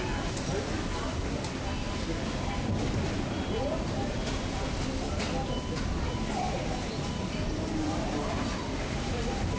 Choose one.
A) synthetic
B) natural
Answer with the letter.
A